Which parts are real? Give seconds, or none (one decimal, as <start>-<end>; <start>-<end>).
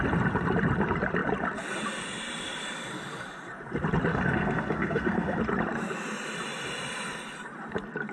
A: 0.0-4.1; 5.4-8.1